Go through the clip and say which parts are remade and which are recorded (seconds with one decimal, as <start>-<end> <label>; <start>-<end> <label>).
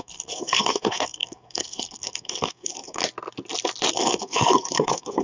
0.0-3.0 remade; 3.0-3.9 recorded; 3.9-5.2 remade